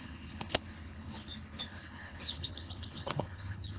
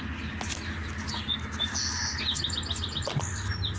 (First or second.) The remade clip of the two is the first